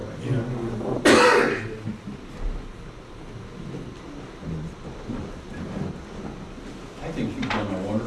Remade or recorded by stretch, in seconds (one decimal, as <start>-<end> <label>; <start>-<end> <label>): 0.0-8.1 recorded